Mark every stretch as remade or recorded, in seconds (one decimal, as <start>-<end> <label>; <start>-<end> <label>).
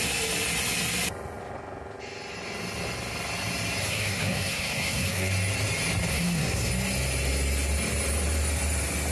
0.0-3.8 recorded; 3.8-5.3 remade; 5.3-6.1 recorded; 6.1-6.7 remade; 6.7-9.1 recorded